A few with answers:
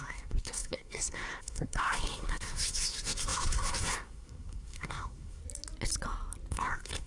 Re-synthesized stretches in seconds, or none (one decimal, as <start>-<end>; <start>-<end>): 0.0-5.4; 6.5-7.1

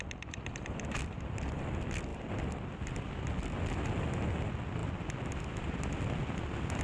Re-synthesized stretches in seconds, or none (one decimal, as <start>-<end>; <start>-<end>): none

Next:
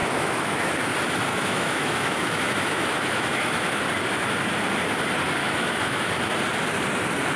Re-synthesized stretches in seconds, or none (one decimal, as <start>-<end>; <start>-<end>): 0.0-0.7; 1.3-3.8; 5.4-6.1